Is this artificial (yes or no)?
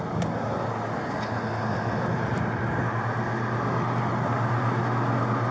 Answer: no